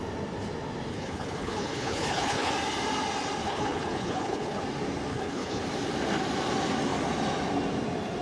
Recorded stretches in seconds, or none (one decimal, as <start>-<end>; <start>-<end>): 0.0-0.9; 2.5-3.4; 4.6-5.1; 5.6-8.2